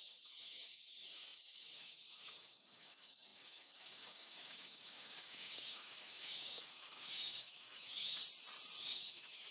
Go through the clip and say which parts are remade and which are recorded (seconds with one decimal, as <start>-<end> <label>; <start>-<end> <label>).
0.0-8.2 remade; 8.2-8.8 recorded; 8.8-9.5 remade